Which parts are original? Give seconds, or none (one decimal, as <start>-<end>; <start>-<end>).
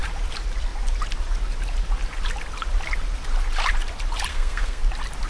0.0-4.3; 4.8-5.3